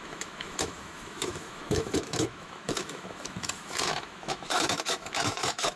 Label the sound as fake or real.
fake